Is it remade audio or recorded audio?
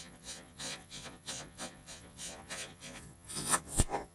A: remade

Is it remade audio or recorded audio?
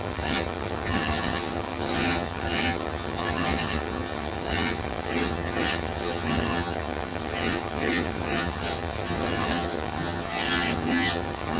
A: remade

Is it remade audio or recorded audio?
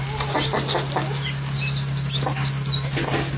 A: recorded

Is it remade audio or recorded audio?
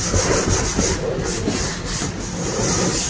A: recorded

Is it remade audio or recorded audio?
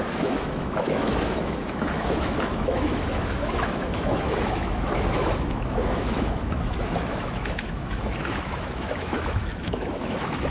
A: remade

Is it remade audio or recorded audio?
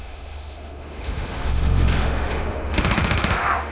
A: remade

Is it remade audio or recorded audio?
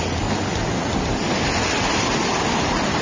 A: recorded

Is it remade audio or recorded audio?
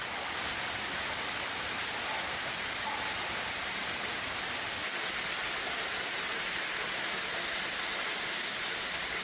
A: recorded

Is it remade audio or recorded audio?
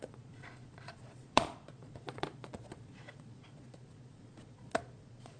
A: remade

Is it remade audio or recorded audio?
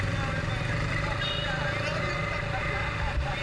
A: recorded